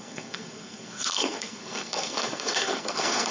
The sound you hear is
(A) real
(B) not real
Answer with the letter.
B